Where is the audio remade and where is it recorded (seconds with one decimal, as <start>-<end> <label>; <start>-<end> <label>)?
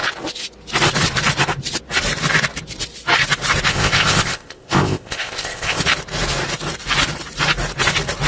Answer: 0.0-3.7 recorded; 3.7-5.8 remade; 5.8-8.3 recorded